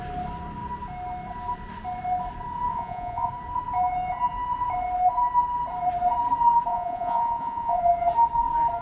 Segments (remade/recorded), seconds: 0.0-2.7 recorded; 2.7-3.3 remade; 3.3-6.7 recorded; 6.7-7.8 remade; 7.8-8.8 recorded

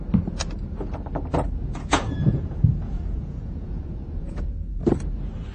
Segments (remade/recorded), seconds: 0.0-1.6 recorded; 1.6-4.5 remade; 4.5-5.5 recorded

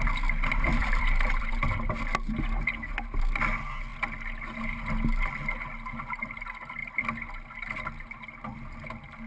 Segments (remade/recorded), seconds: 0.0-0.8 recorded; 0.8-1.5 remade; 1.5-9.3 recorded

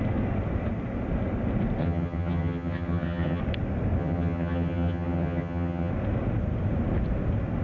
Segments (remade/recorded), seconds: 0.0-1.8 recorded; 1.8-3.4 remade; 3.4-4.0 recorded; 4.0-5.9 remade; 5.9-7.6 recorded

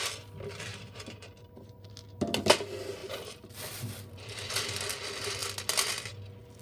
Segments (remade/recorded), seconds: 0.0-0.7 recorded; 0.7-1.9 remade; 1.9-3.0 recorded; 3.0-4.5 remade; 4.5-6.6 recorded

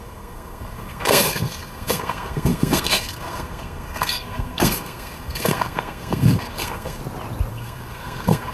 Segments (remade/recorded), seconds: 0.0-7.0 remade; 7.0-7.5 recorded; 7.5-8.5 remade

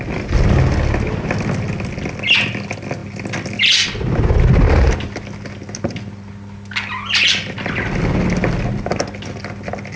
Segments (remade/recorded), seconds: 0.0-10.0 recorded